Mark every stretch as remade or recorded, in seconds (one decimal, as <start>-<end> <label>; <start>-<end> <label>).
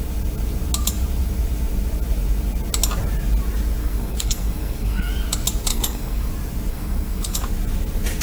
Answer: 0.0-3.8 recorded; 3.8-5.1 remade; 5.1-5.7 recorded; 5.7-6.3 remade; 6.3-6.7 recorded; 6.7-7.4 remade; 7.4-8.2 recorded